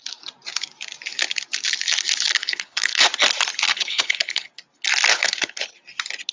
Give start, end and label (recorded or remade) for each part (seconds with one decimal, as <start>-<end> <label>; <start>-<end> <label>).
0.0-2.4 recorded; 2.4-3.0 remade; 3.0-3.7 recorded; 3.7-4.5 remade; 4.5-5.1 recorded; 5.1-5.7 remade; 5.7-6.3 recorded